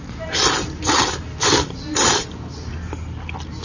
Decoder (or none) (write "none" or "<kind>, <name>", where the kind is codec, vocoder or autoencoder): none